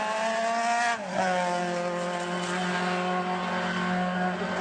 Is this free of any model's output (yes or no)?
yes